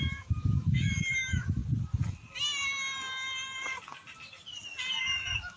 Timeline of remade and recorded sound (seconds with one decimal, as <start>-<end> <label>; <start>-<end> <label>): 0.0-1.6 remade; 1.6-5.0 recorded; 5.0-5.6 remade